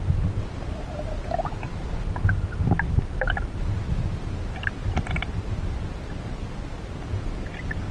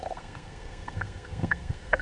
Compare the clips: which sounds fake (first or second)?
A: second